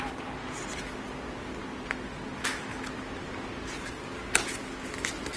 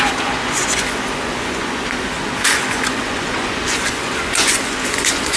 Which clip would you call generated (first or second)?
second